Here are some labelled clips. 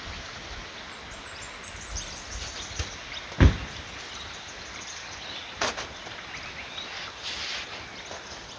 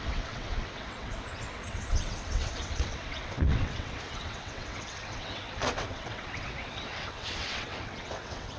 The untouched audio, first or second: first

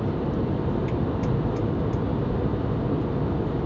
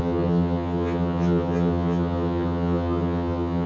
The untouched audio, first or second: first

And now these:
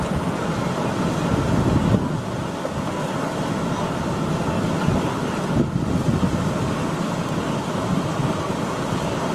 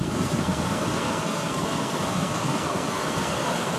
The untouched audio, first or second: first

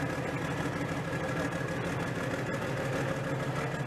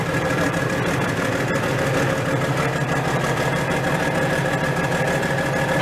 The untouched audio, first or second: first